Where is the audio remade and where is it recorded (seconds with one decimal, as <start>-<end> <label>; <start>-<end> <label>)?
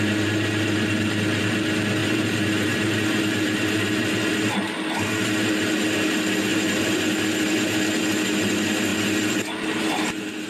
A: 0.0-2.0 recorded; 2.0-3.9 remade; 3.9-6.5 recorded; 6.5-7.0 remade; 7.0-10.5 recorded